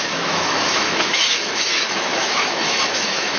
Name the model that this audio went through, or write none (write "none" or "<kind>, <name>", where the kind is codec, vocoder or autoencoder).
autoencoder, DAC-VAE